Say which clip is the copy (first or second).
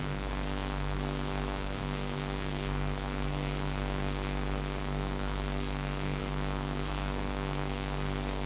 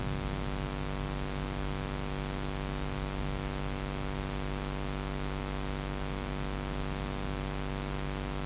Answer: first